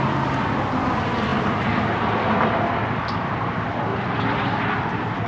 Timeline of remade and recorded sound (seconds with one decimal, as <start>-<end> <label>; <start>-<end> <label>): 0.0-3.9 recorded; 3.9-5.3 remade